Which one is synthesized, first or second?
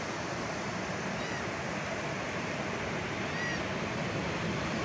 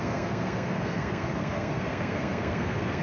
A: second